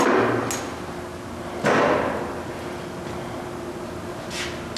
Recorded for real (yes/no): yes